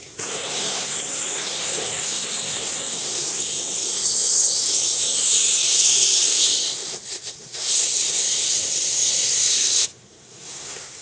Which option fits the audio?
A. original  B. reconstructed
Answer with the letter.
B